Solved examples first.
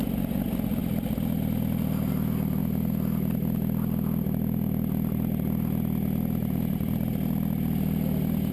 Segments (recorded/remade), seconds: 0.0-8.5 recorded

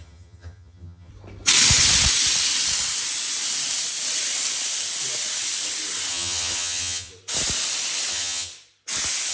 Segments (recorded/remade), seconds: 0.0-1.1 remade; 1.1-6.1 recorded; 6.1-7.1 remade; 7.1-8.1 recorded; 8.1-8.5 remade; 8.5-9.3 recorded

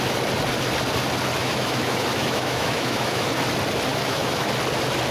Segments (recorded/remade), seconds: 0.0-1.4 recorded; 1.4-3.3 remade; 3.3-3.9 recorded; 3.9-4.5 remade; 4.5-5.1 recorded

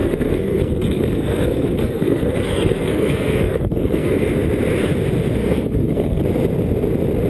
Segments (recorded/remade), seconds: 0.0-4.3 remade; 4.3-5.4 recorded; 5.4-6.2 remade; 6.2-7.3 recorded